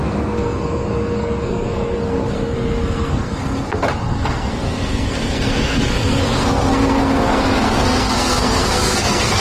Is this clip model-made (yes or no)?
yes